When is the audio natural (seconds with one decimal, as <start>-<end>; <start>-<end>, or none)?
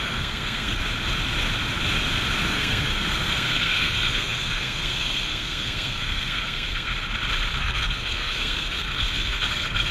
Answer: 0.8-2.5; 6.9-7.6